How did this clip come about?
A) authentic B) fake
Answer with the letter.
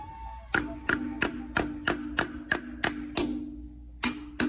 A